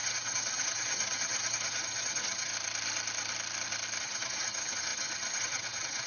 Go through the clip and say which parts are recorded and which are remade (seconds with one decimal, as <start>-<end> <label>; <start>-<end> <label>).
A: 0.0-2.5 remade; 2.5-4.0 recorded; 4.0-6.1 remade